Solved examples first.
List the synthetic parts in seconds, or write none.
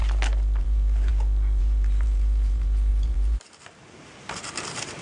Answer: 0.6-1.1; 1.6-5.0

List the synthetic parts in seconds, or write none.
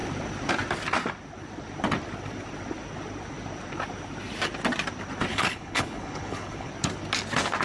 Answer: 5.3-6.7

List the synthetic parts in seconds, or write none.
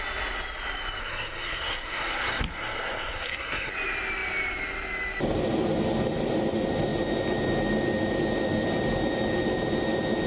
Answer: 1.0-3.7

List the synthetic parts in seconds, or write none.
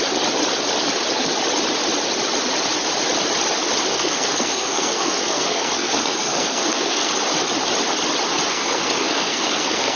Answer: 3.9-7.1; 8.5-10.0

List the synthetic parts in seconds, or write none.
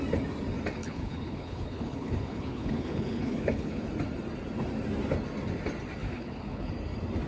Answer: 0.8-3.9; 6.0-6.7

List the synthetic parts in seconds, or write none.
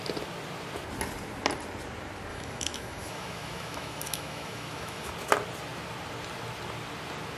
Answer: 2.3-5.1